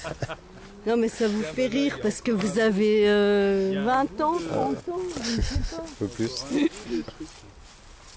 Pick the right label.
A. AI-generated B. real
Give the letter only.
B